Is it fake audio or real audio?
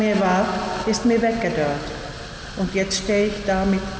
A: real